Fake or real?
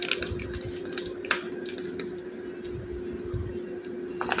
real